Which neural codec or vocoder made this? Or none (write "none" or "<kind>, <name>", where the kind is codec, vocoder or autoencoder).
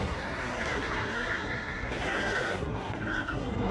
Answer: codec, SNAC